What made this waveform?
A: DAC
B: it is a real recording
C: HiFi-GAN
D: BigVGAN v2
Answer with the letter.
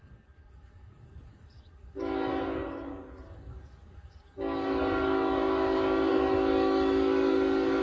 A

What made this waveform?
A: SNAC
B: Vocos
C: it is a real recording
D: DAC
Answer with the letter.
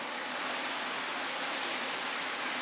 C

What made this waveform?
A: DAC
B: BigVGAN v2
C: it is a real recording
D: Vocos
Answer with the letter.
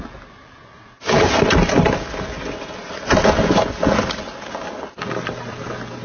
C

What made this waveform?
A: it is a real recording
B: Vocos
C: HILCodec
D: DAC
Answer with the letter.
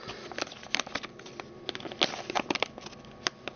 A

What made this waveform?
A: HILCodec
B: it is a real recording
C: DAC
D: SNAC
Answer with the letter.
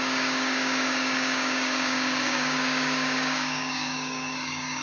C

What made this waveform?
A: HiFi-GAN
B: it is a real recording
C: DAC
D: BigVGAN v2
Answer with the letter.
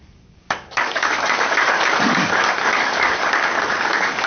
C